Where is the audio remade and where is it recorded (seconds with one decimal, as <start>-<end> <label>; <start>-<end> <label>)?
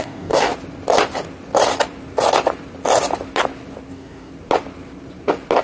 0.0-0.5 remade; 0.5-3.9 recorded; 3.9-4.3 remade; 4.3-5.6 recorded